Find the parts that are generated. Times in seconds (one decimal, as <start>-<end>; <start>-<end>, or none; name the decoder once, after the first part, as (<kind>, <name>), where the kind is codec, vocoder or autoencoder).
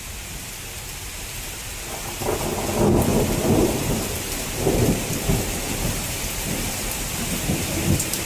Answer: 3.1-7.0 (vocoder, BigVGAN v2)